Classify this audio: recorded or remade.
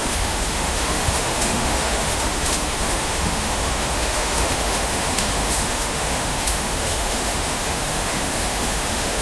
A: remade